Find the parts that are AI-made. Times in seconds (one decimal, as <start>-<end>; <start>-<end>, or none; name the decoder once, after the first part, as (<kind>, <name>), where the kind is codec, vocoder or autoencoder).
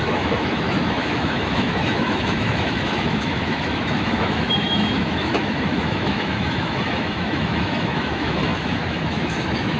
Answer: 0.0-9.8 (autoencoder, DAC-VAE)